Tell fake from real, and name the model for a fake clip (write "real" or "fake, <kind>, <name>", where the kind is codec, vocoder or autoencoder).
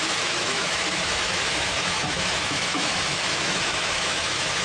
fake, autoencoder, DAC-VAE